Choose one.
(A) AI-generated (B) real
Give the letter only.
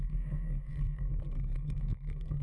A